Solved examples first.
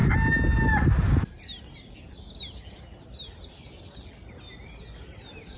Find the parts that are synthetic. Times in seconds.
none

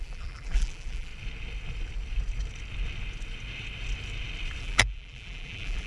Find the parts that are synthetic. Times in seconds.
0.0-1.1 (vocoder, BigVGAN v2); 4.6-5.9

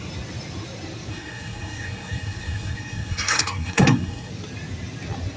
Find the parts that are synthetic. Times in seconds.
1.1-4.3 (codec, SNAC)